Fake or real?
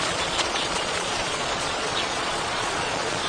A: fake